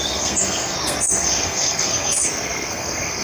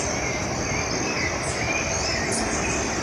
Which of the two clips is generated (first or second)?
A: first